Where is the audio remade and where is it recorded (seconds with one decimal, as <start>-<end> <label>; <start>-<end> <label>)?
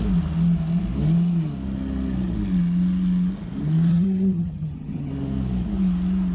0.0-3.9 recorded; 3.9-5.1 remade; 5.1-6.3 recorded